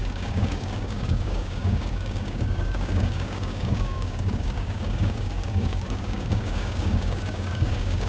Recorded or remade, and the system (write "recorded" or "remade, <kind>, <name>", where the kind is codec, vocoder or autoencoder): remade, codec, DAC